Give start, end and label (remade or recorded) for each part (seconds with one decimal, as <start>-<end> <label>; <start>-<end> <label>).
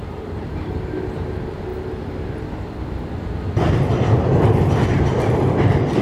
0.0-0.7 remade; 0.7-6.0 recorded